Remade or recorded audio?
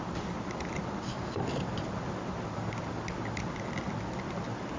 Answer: recorded